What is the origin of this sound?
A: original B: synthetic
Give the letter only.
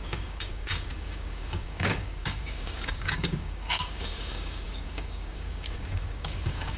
B